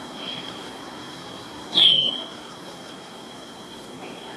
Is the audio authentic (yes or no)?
no